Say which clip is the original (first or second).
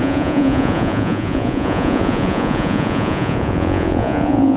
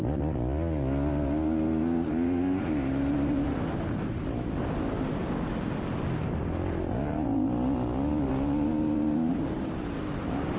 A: second